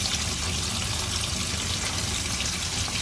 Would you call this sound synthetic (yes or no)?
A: no